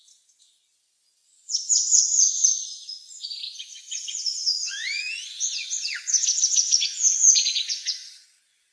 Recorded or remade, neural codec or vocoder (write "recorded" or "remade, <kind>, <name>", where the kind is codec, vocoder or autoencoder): remade, vocoder, Vocos